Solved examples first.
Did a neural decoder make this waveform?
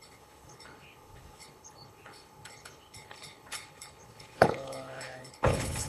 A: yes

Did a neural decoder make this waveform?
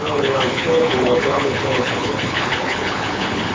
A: yes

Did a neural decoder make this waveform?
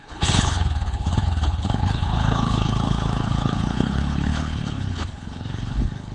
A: yes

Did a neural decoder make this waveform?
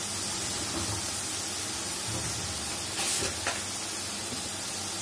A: no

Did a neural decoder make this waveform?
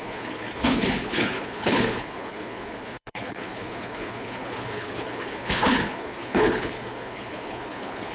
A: yes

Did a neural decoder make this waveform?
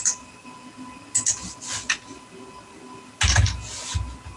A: no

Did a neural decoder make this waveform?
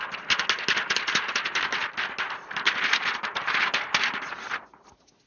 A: no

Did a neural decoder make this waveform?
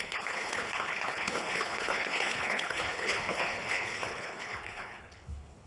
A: yes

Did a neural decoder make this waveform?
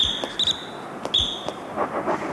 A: no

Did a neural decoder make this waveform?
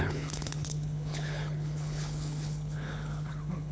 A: yes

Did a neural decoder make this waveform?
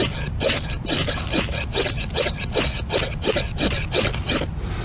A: no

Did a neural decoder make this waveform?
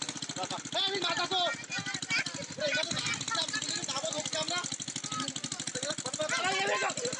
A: no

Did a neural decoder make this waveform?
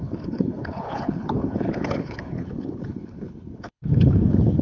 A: yes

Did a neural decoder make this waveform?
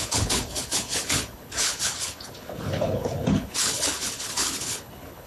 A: yes